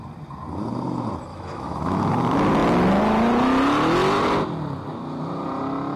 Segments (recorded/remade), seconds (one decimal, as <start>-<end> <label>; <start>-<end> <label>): 0.0-1.3 recorded; 1.3-2.1 remade; 2.1-6.0 recorded